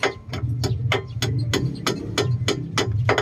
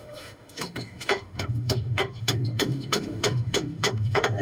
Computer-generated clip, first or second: second